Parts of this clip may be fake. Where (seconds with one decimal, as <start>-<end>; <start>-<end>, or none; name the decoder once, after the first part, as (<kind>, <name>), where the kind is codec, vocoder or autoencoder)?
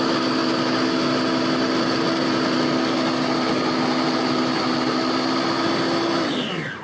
none